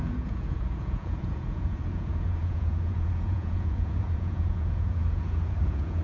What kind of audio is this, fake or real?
fake